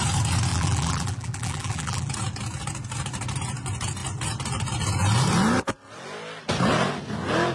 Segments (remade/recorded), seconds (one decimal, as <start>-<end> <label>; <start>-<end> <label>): 0.0-0.5 recorded; 0.5-2.1 remade; 2.1-7.5 recorded